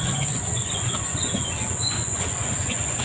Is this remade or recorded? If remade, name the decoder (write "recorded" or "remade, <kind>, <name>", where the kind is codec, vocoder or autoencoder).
remade, vocoder, Vocos